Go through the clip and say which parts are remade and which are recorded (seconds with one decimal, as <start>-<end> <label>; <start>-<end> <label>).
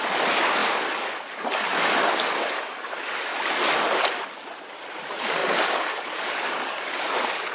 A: 0.0-3.3 remade; 3.3-5.0 recorded; 5.0-7.5 remade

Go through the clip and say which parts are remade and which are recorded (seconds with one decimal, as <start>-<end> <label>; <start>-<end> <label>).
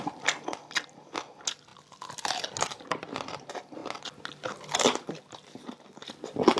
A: 0.0-6.6 recorded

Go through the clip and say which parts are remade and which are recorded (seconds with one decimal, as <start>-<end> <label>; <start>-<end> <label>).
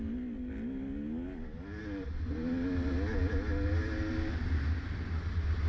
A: 0.0-5.7 recorded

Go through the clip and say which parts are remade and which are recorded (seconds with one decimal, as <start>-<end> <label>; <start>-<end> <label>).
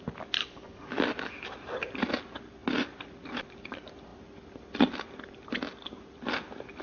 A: 0.0-0.4 recorded; 0.4-1.0 remade; 1.0-6.8 recorded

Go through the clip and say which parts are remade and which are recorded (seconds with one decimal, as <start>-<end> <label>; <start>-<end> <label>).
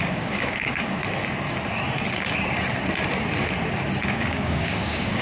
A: 0.0-1.0 remade; 1.0-4.1 recorded; 4.1-5.2 remade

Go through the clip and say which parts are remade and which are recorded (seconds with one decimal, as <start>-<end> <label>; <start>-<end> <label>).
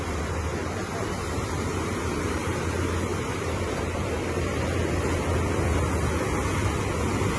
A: 0.0-0.6 recorded; 0.6-4.7 remade; 4.7-7.4 recorded